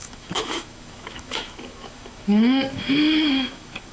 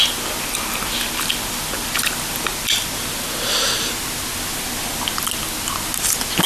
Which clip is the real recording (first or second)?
second